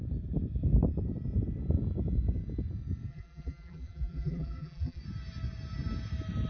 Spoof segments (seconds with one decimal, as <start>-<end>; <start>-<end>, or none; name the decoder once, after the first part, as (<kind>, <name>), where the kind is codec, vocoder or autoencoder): 3.1-5.0 (vocoder, BigVGAN v2)

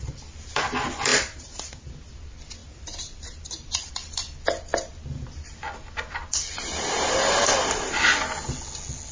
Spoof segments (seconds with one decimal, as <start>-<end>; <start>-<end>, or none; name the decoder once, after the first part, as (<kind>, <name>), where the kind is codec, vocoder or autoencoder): 1.1-1.9 (vocoder, BigVGAN v2); 2.6-3.9

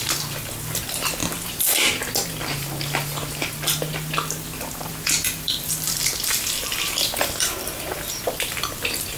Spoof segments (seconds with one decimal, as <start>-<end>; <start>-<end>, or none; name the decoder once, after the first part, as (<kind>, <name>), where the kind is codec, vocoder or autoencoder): 0.0-1.2 (vocoder, BigVGAN v2); 4.9-9.2

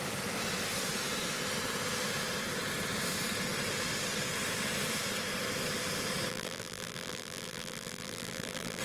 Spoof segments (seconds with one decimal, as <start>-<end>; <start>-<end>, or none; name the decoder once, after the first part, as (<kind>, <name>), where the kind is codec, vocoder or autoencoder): 6.3-8.8 (vocoder, BigVGAN v2)

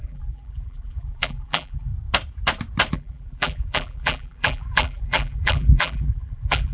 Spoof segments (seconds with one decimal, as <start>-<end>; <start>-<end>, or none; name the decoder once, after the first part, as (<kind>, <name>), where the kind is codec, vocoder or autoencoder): 0.0-1.9 (vocoder, BigVGAN v2); 2.9-6.7

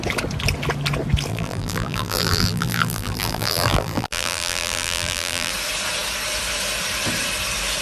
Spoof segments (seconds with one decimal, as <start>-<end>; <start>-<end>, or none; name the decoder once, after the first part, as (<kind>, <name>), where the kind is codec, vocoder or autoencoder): 1.3-5.5 (vocoder, BigVGAN v2)

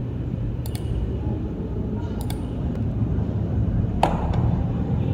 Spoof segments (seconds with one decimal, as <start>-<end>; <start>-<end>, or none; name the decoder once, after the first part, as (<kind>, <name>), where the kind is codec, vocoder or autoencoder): 0.0-5.1 (vocoder, BigVGAN v2)

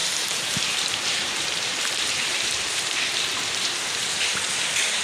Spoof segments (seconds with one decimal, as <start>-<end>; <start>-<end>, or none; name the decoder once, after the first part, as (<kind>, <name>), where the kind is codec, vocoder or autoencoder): 0.0-3.0 (vocoder, BigVGAN v2)